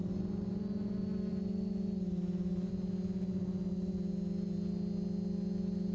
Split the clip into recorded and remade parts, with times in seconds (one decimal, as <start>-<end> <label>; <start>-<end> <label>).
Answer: 0.0-5.9 recorded